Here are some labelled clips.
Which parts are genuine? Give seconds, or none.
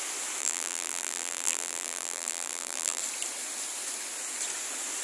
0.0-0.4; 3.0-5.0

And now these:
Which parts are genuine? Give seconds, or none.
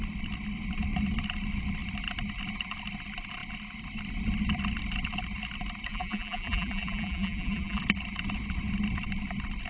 0.0-5.9; 7.8-9.7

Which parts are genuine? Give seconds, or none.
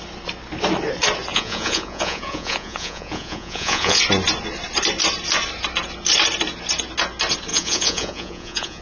0.0-1.3; 4.0-7.5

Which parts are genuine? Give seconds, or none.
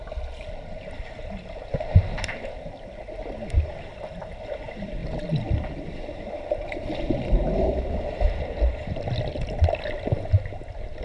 0.0-11.0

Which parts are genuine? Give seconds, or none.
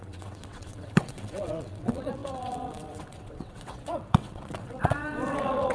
none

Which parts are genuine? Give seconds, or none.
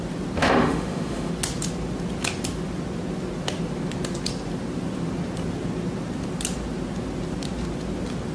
0.0-0.4; 1.3-8.3